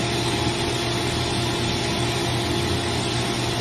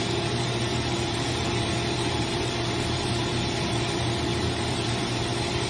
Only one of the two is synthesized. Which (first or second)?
second